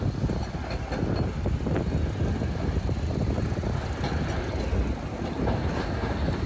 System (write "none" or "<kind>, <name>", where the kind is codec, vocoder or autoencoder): none